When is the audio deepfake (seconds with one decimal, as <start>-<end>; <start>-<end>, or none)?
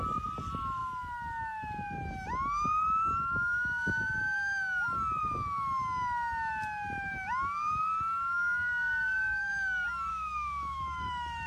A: 8.7-9.5; 10.1-11.5